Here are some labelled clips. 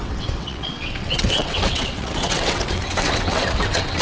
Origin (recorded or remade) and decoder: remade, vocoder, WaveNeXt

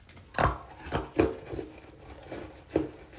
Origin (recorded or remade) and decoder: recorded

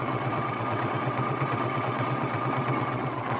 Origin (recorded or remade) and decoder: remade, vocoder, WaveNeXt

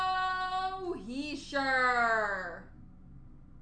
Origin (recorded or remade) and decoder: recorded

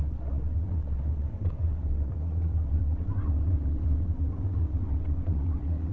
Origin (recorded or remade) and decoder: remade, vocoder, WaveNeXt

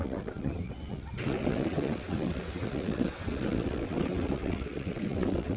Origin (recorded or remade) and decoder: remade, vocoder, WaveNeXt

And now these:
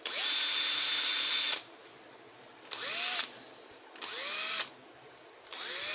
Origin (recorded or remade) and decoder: recorded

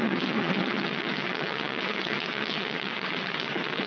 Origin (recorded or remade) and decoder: remade, vocoder, WaveNeXt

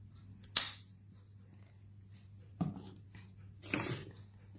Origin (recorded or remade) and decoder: recorded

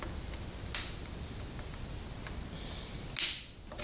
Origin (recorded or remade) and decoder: recorded